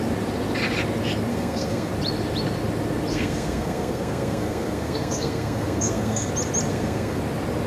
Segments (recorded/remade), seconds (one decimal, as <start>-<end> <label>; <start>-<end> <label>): 0.0-1.3 recorded; 1.3-1.9 remade; 1.9-3.1 recorded; 3.1-6.3 remade; 6.3-6.7 recorded; 6.7-7.2 remade; 7.2-7.7 recorded